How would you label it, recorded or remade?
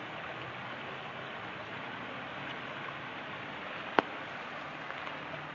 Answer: recorded